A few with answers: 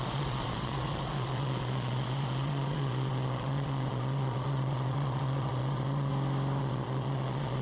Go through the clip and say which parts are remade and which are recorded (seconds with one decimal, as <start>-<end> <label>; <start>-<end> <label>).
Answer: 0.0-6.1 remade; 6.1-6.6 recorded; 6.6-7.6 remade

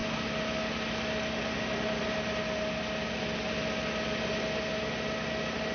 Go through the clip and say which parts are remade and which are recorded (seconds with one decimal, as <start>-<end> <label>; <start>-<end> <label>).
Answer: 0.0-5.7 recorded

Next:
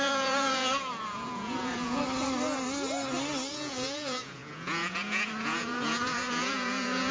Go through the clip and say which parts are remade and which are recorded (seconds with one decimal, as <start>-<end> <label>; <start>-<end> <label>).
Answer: 0.0-2.0 remade; 2.0-3.5 recorded; 3.5-7.1 remade

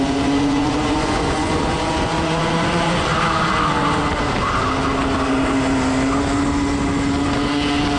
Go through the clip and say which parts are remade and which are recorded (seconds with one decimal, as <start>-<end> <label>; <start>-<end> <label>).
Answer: 0.0-3.1 remade; 3.1-8.0 recorded

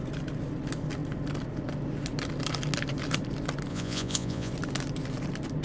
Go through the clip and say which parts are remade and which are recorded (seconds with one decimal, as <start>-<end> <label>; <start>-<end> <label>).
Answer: 0.0-3.7 recorded; 3.7-4.5 remade; 4.5-5.6 recorded

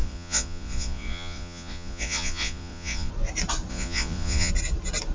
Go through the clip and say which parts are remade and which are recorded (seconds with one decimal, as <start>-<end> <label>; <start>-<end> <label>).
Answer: 0.0-3.1 remade; 3.1-3.7 recorded; 3.7-4.5 remade; 4.5-5.1 recorded

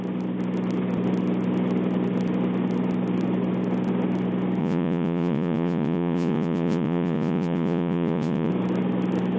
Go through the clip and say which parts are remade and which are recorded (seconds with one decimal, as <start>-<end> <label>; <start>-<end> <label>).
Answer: 0.0-4.6 recorded; 4.6-8.5 remade; 8.5-9.4 recorded